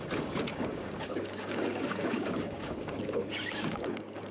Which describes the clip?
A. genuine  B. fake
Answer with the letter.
B